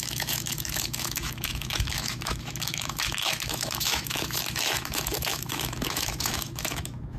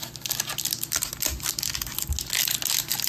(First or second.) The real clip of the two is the second